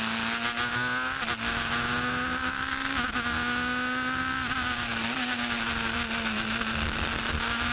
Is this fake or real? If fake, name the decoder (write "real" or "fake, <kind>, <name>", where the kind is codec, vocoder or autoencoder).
real